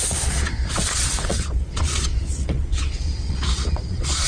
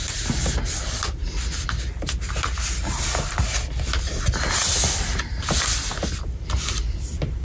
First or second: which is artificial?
first